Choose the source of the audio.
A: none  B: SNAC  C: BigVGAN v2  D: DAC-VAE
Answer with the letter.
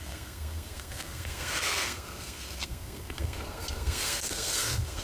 B